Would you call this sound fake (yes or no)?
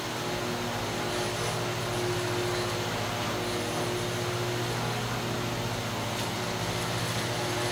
no